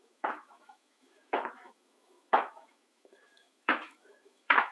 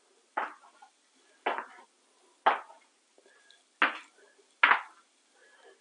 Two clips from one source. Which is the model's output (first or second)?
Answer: first